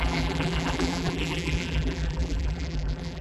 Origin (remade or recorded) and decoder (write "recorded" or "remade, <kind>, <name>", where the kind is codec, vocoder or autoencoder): remade, vocoder, BigVGAN v2